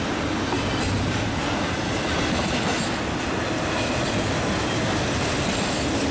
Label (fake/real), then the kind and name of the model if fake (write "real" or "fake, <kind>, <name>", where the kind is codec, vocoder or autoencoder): real